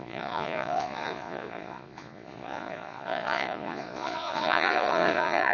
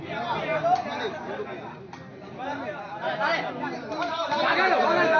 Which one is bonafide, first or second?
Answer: second